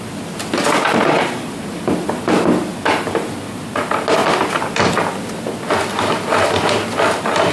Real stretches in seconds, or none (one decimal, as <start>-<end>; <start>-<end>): 2.7-3.3; 4.2-7.5